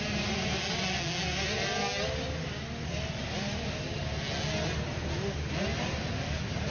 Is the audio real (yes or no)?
yes